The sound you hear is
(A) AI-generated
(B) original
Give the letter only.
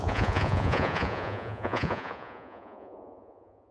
A